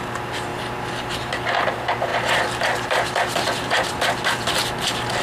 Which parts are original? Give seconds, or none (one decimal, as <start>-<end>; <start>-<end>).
0.0-0.5; 1.3-5.2